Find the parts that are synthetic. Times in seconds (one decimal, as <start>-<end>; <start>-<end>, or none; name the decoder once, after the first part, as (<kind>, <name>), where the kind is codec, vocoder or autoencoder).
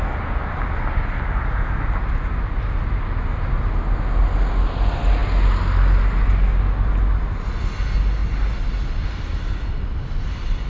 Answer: none